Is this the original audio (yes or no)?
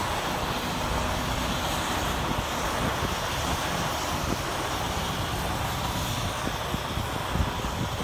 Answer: yes